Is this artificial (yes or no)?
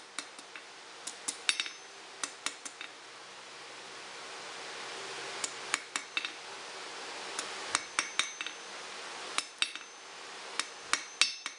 no